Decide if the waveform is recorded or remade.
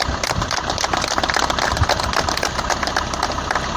recorded